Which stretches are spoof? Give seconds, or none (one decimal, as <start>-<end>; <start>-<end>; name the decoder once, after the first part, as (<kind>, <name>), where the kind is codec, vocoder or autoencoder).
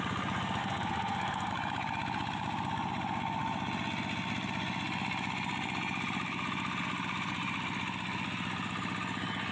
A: 0.6-1.5 (codec, SNAC)